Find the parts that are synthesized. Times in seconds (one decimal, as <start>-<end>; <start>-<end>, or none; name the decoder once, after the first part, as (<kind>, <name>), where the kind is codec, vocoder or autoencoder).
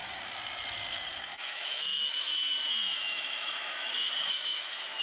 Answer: 1.2-5.0 (autoencoder, DAC-VAE)